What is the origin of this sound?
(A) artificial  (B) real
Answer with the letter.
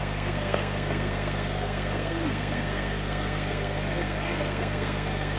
A